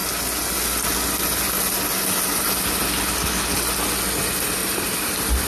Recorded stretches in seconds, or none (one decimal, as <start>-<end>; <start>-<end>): 0.0-4.6; 5.1-5.5